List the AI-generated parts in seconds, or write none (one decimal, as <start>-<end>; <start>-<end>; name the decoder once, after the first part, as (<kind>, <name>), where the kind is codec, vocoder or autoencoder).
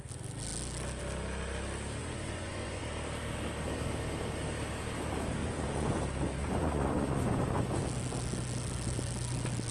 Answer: 2.0-2.8 (vocoder, Vocos); 5.4-6.0; 6.4-7.8